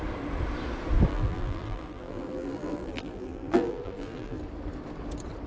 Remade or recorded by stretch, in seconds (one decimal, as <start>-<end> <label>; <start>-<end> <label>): 0.0-1.1 recorded; 1.1-4.4 remade; 4.4-5.5 recorded